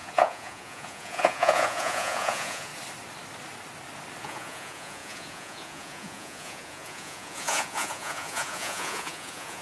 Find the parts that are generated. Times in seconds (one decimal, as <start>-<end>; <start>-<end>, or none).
0.0-2.7; 4.2-9.6